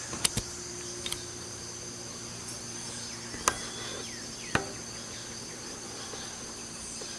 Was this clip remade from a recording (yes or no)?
no